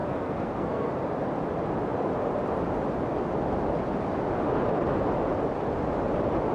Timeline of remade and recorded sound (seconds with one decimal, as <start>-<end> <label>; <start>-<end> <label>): 0.0-0.9 remade; 0.9-6.5 recorded